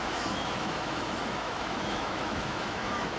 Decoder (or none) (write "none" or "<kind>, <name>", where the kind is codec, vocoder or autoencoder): autoencoder, DAC-VAE